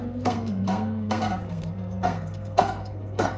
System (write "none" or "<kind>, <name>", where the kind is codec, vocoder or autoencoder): codec, SNAC